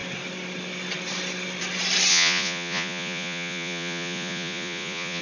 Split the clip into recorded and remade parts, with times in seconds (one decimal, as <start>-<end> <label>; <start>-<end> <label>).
0.0-2.1 recorded; 2.1-5.2 remade